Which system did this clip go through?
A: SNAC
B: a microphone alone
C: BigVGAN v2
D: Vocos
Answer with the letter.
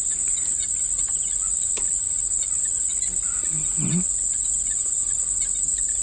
B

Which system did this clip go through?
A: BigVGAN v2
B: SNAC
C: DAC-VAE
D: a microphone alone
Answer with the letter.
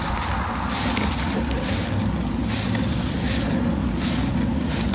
D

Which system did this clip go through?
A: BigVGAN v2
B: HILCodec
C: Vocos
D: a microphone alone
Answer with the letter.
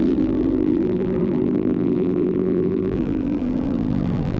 A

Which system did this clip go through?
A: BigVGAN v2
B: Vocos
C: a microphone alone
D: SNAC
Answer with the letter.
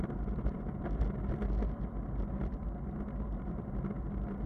A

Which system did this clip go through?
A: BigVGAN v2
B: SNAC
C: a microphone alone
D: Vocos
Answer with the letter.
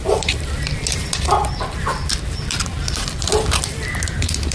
A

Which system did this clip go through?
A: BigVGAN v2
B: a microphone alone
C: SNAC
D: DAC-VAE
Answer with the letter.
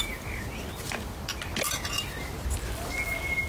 B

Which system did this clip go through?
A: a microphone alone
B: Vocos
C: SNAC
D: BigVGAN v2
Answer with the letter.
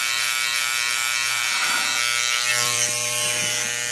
D